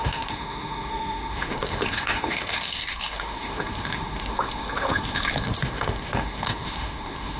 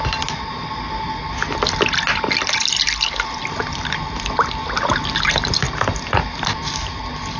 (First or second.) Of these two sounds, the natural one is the second